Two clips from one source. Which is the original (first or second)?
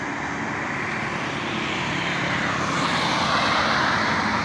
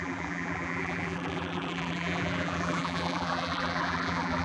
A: first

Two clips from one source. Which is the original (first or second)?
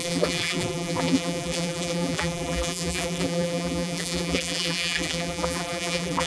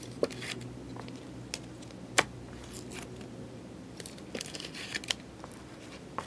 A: second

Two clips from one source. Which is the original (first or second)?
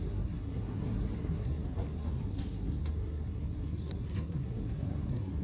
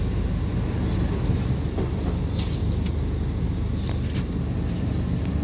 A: second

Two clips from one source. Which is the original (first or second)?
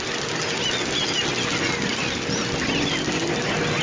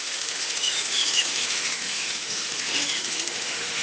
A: first